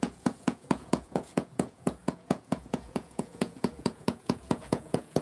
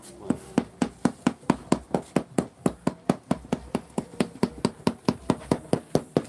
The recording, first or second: second